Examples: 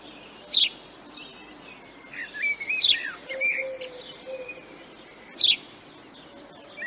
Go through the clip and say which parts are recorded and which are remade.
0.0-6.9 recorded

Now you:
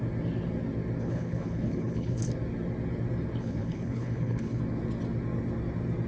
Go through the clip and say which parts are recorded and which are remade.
0.0-1.0 recorded; 1.0-2.3 remade; 2.3-3.4 recorded; 3.4-4.6 remade; 4.6-6.1 recorded

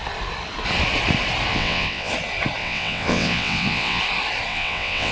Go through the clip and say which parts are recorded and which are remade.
0.0-1.5 recorded; 1.5-2.1 remade; 2.1-2.6 recorded; 2.6-4.0 remade; 4.0-4.5 recorded; 4.5-5.1 remade

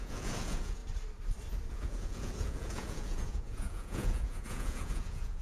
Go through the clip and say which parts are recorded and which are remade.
0.0-0.8 remade; 0.8-1.7 recorded; 1.7-5.4 remade

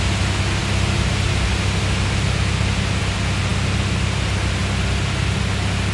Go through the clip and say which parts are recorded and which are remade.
0.0-5.9 recorded

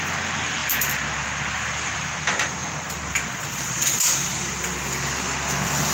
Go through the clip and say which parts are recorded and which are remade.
0.0-0.6 recorded; 0.6-2.2 remade; 2.2-2.6 recorded; 2.6-4.7 remade; 4.7-5.9 recorded

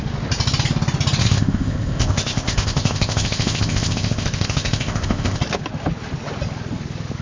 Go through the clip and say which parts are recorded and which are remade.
0.0-1.2 recorded; 1.2-5.4 remade; 5.4-7.2 recorded

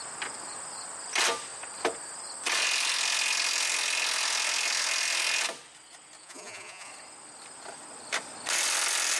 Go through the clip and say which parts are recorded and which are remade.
0.0-6.2 recorded; 6.2-6.9 remade; 6.9-9.2 recorded